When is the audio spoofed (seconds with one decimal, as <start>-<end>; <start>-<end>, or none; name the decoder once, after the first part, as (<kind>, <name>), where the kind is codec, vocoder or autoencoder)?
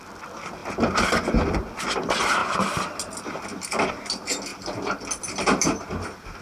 none